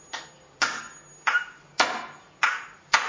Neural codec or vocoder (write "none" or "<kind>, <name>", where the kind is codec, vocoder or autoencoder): none